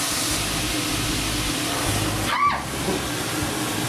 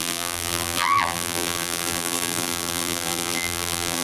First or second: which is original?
first